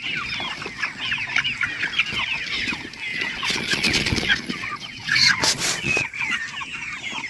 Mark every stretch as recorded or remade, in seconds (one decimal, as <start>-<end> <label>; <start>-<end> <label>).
0.0-3.1 recorded; 3.1-6.4 remade; 6.4-7.3 recorded